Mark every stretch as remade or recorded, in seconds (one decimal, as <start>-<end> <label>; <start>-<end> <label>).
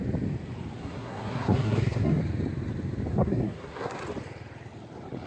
0.0-0.8 recorded; 0.8-2.2 remade; 2.2-3.1 recorded; 3.1-4.0 remade; 4.0-5.3 recorded